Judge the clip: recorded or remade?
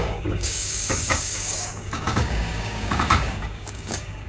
remade